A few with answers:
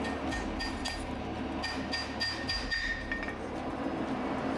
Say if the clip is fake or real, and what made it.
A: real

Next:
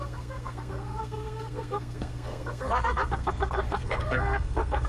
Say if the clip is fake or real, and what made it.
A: fake, codec, SNAC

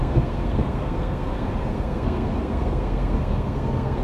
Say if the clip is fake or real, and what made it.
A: fake, codec, SNAC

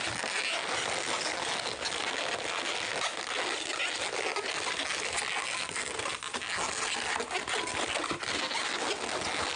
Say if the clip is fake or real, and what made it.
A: real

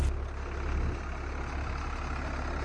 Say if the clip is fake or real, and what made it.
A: real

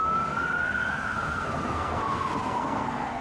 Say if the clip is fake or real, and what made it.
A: fake, codec, SNAC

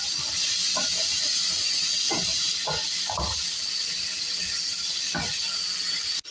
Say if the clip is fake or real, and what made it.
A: real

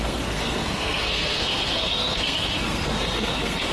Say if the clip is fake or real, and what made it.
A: fake, codec, SNAC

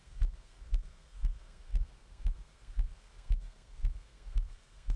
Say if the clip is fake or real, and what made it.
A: fake, codec, SNAC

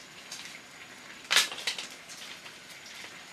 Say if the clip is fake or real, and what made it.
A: real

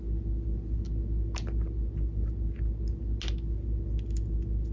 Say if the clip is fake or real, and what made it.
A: real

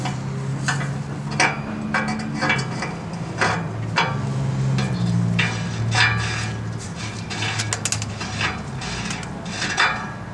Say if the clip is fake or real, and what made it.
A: real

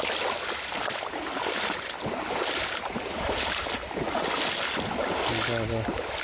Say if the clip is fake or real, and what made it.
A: real